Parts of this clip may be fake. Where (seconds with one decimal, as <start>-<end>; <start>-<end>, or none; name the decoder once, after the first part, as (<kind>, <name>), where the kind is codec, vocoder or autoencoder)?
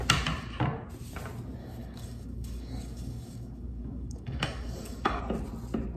1.6-5.2 (codec, DAC)